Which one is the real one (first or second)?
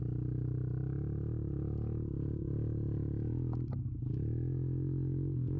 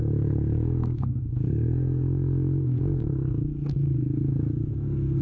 first